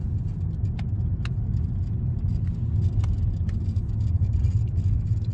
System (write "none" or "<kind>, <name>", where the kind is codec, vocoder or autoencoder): none